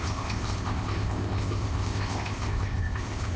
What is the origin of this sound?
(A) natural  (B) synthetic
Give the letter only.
B